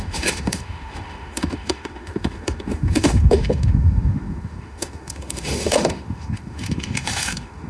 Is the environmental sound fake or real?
fake